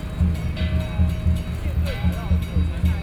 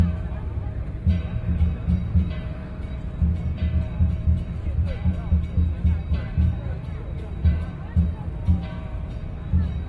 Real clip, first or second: first